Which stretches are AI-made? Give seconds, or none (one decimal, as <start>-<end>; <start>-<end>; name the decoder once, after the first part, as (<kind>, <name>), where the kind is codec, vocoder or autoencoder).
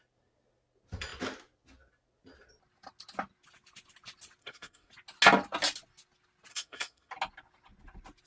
4.4-4.9 (codec, SNAC); 6.5-7.1